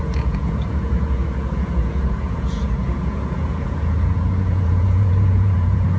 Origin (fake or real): fake